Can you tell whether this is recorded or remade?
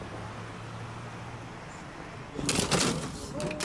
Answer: recorded